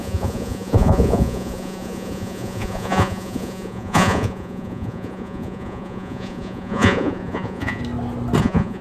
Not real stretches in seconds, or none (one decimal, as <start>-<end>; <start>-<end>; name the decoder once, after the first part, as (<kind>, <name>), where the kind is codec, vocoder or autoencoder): 0.0-7.8 (vocoder, Vocos); 8.4-8.8